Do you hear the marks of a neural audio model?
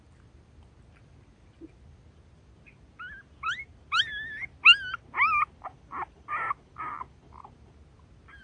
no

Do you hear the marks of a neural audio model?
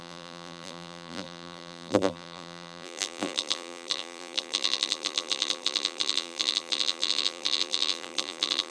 yes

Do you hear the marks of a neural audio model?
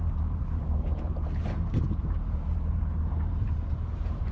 yes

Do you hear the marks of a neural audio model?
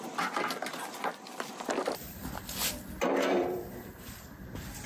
yes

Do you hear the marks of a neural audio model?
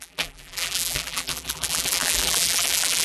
yes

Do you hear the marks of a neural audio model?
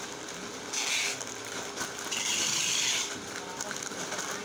no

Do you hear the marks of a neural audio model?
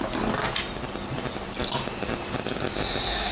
no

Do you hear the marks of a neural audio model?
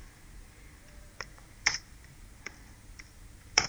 yes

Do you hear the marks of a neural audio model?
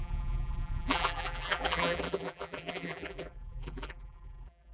yes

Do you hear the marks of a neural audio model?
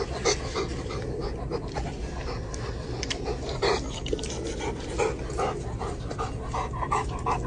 no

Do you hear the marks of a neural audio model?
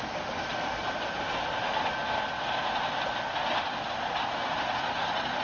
no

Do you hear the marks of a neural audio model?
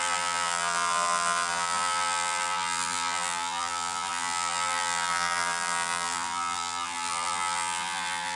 yes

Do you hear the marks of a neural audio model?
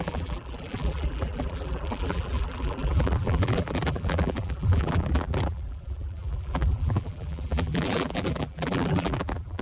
yes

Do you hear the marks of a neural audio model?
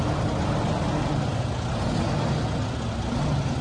no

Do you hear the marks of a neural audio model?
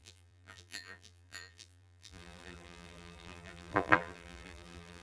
yes